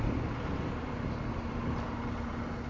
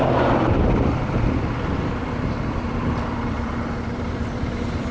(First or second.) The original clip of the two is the first